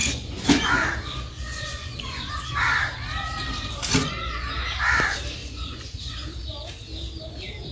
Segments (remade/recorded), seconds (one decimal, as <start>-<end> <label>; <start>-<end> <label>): 0.0-2.3 remade; 2.3-4.0 recorded; 4.0-4.5 remade; 4.5-5.4 recorded; 5.4-6.1 remade; 6.1-7.7 recorded